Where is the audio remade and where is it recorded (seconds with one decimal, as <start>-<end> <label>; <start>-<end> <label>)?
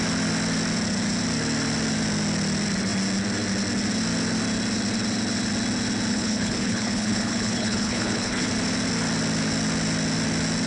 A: 0.0-6.1 recorded; 6.1-8.5 remade; 8.5-10.7 recorded